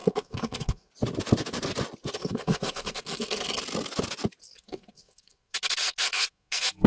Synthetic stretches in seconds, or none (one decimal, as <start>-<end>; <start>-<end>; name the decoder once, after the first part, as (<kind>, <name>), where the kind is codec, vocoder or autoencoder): 0.0-0.9 (codec, SNAC); 2.2-3.6; 4.4-6.9